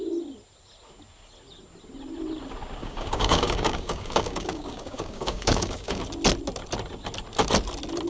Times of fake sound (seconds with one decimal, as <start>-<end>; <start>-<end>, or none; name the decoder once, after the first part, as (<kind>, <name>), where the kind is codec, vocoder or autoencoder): 2.8-6.0 (codec, DAC)